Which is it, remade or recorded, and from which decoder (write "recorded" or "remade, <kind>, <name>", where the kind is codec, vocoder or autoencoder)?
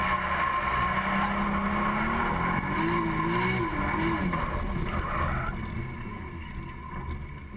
recorded